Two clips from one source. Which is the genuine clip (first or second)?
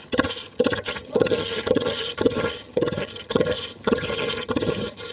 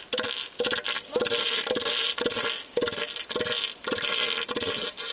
second